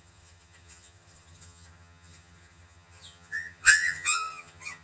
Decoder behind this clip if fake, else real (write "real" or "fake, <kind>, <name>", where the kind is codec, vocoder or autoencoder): fake, vocoder, HiFi-GAN